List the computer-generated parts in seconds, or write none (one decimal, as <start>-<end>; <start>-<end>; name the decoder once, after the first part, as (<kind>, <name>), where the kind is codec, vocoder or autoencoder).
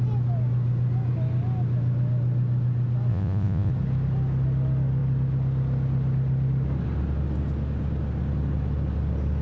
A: 3.1-3.7 (vocoder, Vocos)